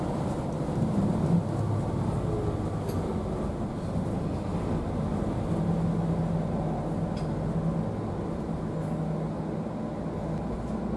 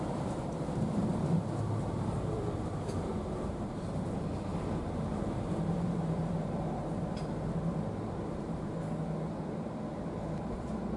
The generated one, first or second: second